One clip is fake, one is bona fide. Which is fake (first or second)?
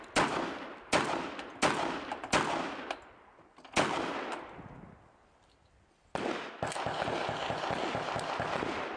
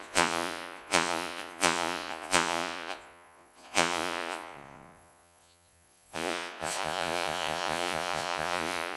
second